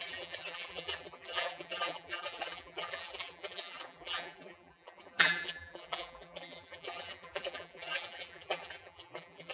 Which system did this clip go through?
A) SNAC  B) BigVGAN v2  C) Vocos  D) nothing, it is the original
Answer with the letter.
B